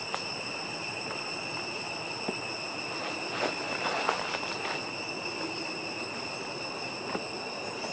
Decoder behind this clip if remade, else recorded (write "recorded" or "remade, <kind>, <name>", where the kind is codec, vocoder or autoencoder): recorded